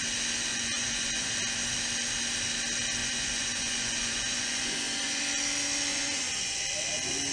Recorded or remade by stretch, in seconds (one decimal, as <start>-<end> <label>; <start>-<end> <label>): 0.0-0.5 recorded; 0.5-1.3 remade; 1.3-3.0 recorded; 3.0-5.2 remade; 5.2-5.9 recorded; 5.9-6.6 remade; 6.6-7.3 recorded